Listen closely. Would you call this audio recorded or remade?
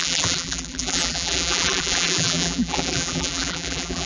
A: remade